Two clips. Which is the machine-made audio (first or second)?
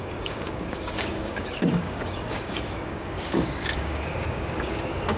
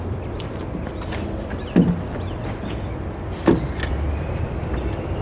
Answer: first